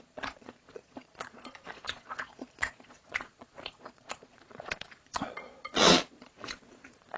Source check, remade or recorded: remade